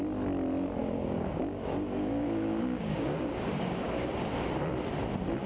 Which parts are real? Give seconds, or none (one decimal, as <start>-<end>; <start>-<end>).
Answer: 0.0-0.8; 4.1-5.5